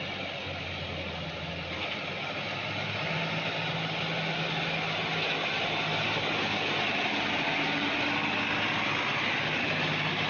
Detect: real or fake real